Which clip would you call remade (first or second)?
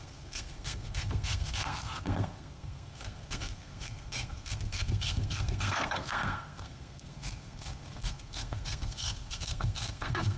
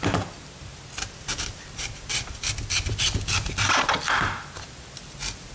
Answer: first